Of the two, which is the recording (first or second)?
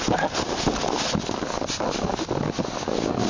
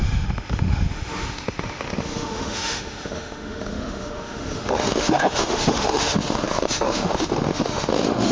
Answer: first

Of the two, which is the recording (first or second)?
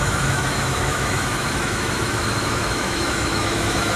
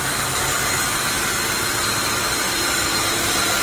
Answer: second